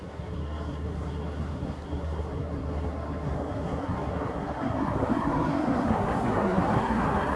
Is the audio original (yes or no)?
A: no